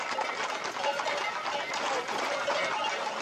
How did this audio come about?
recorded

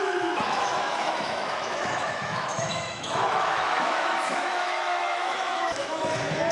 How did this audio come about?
remade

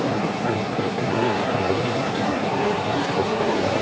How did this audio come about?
remade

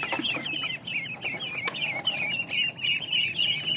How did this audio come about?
recorded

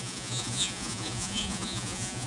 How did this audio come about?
remade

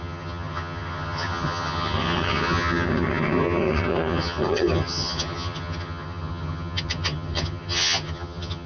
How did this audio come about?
remade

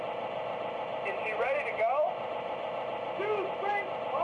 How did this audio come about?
recorded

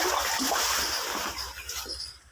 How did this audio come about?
recorded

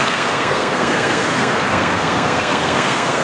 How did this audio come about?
remade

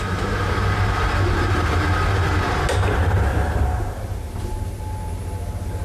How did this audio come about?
recorded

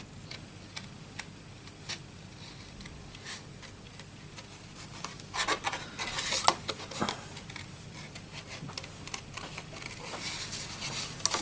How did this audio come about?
recorded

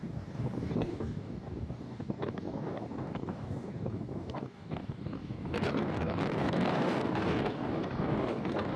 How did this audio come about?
remade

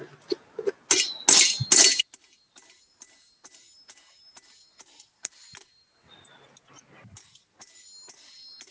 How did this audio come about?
recorded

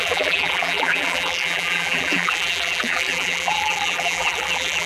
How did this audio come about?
remade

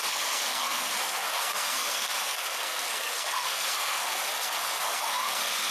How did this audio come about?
remade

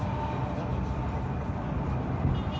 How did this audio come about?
recorded